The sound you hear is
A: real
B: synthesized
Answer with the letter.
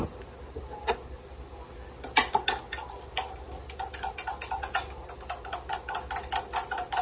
A